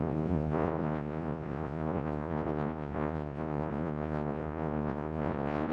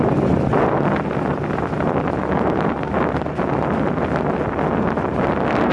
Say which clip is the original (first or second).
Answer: second